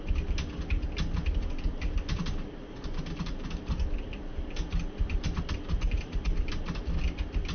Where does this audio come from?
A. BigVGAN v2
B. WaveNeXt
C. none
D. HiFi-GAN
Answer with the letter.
C